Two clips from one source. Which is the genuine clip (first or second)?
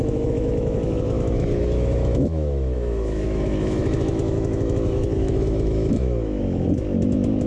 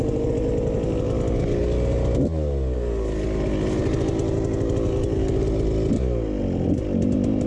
second